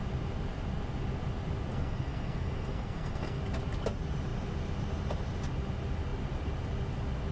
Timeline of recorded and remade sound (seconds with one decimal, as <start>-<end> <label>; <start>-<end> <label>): 0.0-1.7 recorded; 1.7-3.4 remade; 3.4-7.3 recorded